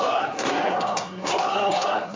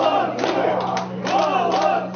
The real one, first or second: second